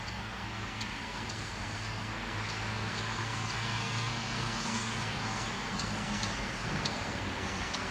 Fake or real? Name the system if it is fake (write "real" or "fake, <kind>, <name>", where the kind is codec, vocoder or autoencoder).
fake, codec, SNAC